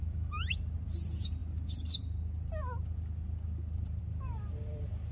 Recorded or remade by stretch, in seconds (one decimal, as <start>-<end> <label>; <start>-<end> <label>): 0.0-5.1 recorded